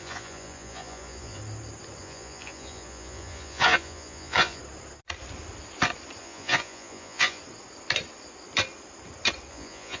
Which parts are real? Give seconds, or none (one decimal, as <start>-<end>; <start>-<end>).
1.4-2.0; 4.6-6.2; 7.4-9.5